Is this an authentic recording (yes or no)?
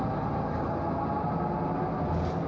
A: yes